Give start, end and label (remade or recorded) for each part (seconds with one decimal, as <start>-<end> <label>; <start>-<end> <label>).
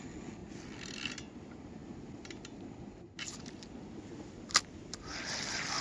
0.0-5.8 recorded